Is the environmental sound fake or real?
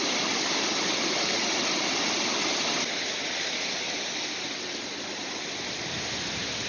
real